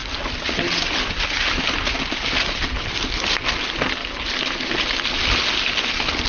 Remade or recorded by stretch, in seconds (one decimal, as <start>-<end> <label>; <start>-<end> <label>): 0.0-6.3 recorded